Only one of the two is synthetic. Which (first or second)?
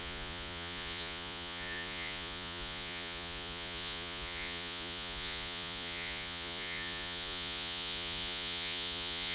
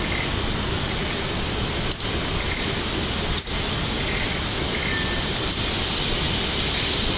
first